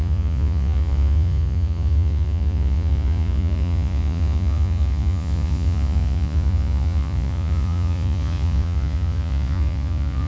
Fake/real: fake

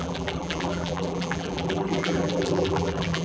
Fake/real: fake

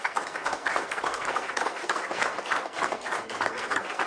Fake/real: fake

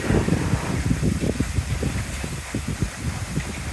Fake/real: real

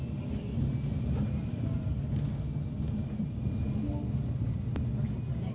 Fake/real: real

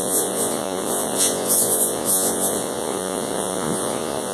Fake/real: fake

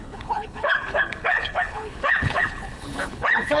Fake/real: fake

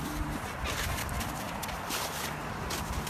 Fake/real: real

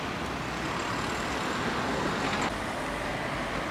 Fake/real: real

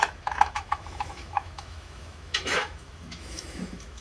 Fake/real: fake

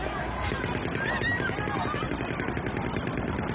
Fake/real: real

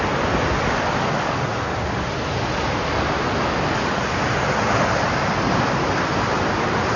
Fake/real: real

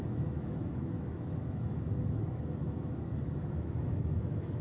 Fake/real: fake